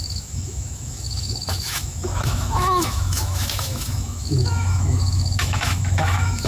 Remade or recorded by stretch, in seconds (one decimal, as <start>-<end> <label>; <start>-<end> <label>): 0.0-6.5 remade